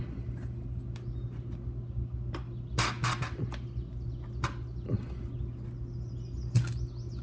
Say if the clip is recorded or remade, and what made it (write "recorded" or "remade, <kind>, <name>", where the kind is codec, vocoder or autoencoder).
recorded